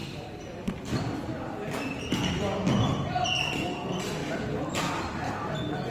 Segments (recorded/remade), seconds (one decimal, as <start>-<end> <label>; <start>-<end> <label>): 0.0-5.9 recorded